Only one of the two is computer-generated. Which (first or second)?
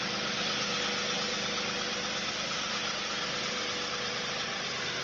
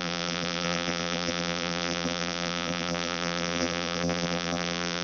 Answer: second